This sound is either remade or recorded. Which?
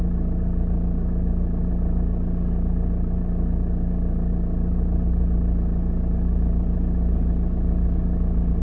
recorded